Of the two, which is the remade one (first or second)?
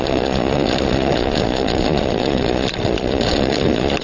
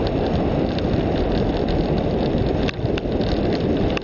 first